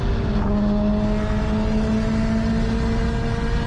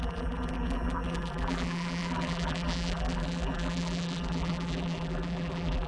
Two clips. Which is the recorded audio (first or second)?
first